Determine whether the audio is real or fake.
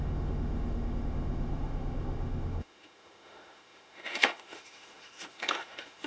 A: fake